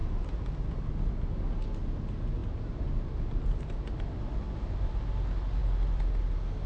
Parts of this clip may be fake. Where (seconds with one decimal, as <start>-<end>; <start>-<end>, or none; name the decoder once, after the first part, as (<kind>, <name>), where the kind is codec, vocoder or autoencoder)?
0.0-0.9 (vocoder, BigVGAN v2); 2.4-3.9